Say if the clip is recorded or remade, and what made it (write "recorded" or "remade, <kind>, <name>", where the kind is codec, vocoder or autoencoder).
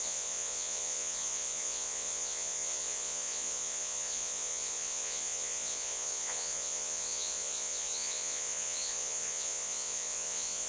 remade, vocoder, Vocos